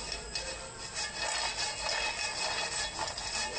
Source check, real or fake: real